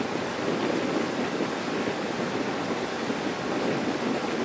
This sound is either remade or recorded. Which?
recorded